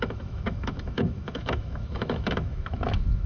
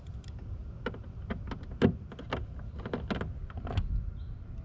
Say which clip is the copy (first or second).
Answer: first